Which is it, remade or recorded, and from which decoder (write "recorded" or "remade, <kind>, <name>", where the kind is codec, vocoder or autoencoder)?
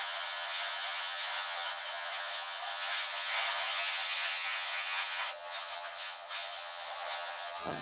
remade, vocoder, HiFi-GAN